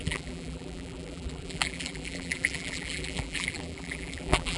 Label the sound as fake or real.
fake